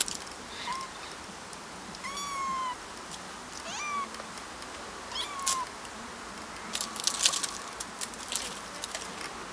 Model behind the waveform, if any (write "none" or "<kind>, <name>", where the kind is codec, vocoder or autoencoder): none